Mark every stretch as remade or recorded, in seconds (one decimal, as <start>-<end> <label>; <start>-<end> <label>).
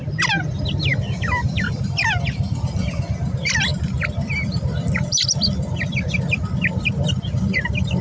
0.0-8.0 recorded